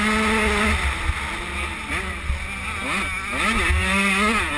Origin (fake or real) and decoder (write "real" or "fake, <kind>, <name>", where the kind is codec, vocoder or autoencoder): real